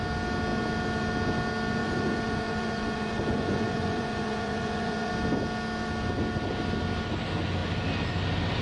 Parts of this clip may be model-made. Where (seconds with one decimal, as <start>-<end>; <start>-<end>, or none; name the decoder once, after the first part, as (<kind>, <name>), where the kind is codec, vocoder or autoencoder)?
1.8-5.1 (vocoder, Vocos)